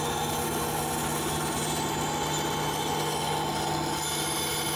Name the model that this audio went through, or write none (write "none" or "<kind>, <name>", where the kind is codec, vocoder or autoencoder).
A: none